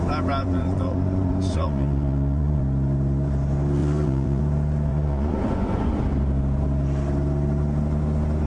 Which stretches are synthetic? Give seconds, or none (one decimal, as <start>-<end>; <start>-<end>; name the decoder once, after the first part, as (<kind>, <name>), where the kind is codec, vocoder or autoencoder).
0.4-2.6 (vocoder, Vocos); 3.8-4.4; 4.9-6.0